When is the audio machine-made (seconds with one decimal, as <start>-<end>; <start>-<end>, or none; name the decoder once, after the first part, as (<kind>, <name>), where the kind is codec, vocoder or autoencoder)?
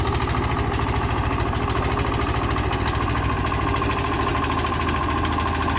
none